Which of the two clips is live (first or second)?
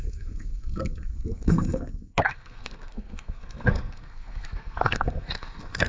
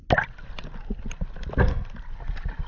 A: second